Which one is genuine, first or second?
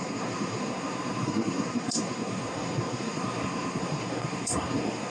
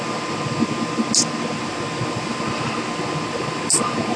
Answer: second